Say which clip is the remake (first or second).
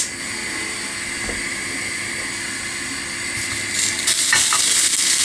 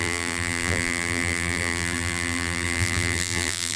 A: second